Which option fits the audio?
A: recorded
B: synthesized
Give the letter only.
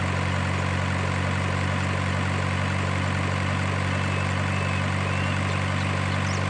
A